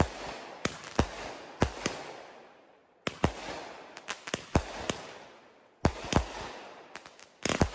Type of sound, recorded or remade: recorded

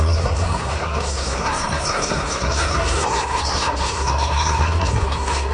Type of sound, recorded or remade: remade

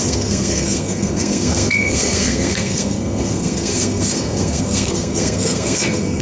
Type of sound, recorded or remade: remade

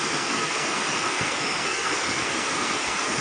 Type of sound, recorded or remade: remade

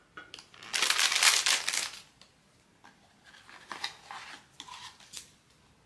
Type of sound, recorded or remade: recorded